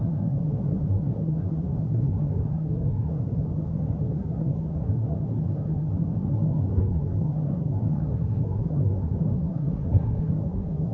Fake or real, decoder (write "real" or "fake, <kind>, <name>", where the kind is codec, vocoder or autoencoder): fake, codec, SNAC